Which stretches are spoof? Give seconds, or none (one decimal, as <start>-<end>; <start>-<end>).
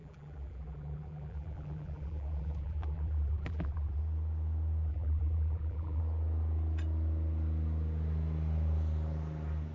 0.0-4.0; 4.9-6.0